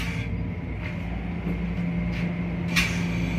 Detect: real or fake real